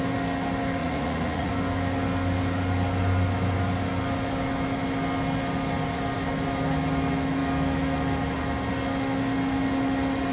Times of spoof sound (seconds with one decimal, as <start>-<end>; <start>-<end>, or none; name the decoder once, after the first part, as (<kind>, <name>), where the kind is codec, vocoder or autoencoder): 0.8-1.5 (vocoder, Vocos)